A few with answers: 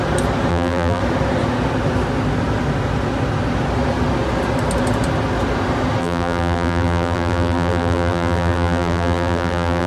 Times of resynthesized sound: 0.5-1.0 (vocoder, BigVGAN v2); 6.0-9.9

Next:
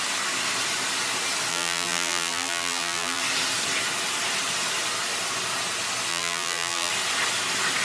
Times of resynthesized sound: 1.5-3.2 (vocoder, BigVGAN v2); 6.1-6.9

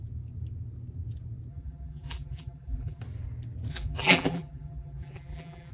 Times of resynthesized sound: 1.5-3.0 (vocoder, BigVGAN v2); 3.7-5.7

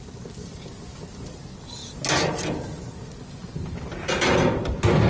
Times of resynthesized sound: none

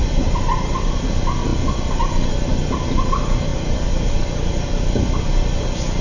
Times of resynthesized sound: 0.0-0.7 (vocoder, BigVGAN v2); 3.5-4.5